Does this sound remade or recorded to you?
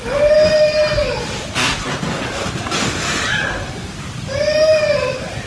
recorded